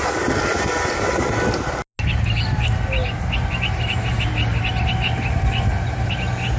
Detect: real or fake real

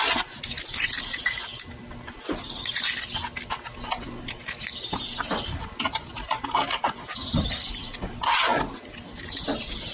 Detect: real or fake real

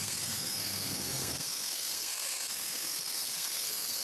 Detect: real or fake fake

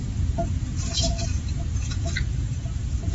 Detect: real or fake fake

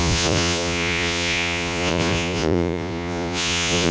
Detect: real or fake fake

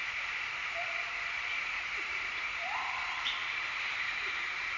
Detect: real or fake fake